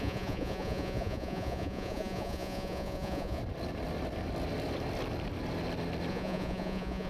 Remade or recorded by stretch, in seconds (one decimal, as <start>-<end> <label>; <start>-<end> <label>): 0.0-3.4 remade; 3.4-6.1 recorded; 6.1-7.1 remade

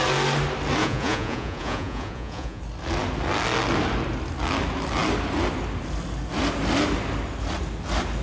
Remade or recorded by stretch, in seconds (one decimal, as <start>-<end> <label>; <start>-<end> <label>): 0.0-0.8 recorded; 0.8-2.6 remade; 2.6-8.2 recorded

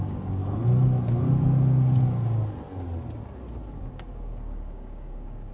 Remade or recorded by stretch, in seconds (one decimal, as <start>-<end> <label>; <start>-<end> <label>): 0.0-0.4 remade; 0.4-3.7 recorded; 3.7-5.5 remade

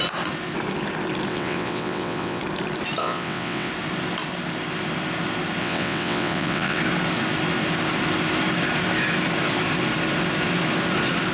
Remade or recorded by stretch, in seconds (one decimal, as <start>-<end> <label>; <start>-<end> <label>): 0.0-1.3 recorded; 1.3-2.4 remade; 2.4-3.0 recorded; 3.0-3.7 remade; 3.7-5.6 recorded; 5.6-6.8 remade; 6.8-11.3 recorded

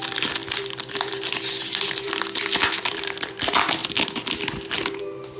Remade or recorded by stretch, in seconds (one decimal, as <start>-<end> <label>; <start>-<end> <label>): 0.0-5.4 recorded

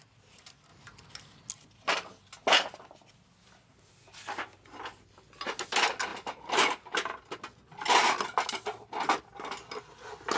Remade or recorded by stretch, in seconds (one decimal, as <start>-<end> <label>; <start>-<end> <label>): 0.0-10.4 recorded